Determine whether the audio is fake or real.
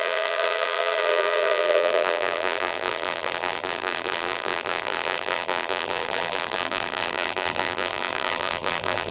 fake